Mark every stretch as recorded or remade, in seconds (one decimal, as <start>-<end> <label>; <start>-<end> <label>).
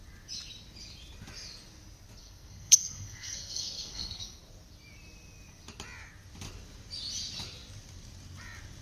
0.0-2.2 recorded; 2.2-4.4 remade; 4.4-8.8 recorded